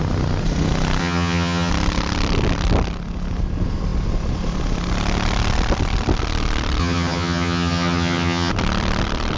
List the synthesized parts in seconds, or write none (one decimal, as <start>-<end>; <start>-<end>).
1.0-1.7; 6.8-8.5